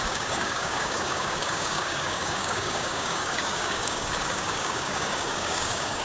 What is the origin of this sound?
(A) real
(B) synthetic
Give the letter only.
B